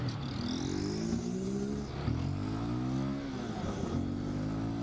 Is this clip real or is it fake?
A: real